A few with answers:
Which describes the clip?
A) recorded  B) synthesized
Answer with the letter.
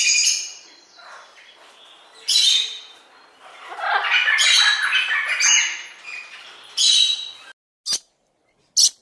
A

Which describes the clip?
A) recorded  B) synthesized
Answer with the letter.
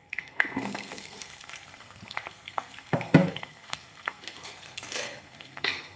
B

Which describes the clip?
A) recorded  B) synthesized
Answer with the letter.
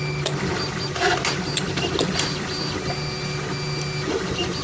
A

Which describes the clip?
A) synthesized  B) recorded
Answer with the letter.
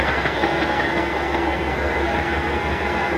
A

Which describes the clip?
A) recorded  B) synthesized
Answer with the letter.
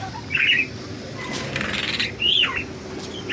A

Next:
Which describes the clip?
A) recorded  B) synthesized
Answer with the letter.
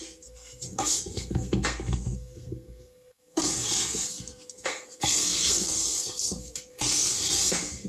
B